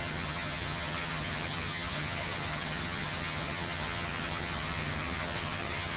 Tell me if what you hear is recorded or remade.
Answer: remade